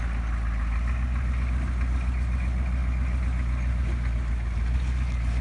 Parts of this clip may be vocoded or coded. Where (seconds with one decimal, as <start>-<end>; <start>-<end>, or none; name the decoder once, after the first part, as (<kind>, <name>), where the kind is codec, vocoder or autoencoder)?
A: none